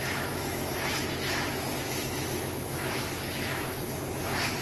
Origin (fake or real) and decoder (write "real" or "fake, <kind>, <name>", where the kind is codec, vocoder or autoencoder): fake, autoencoder, DAC-VAE